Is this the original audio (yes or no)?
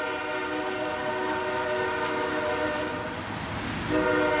yes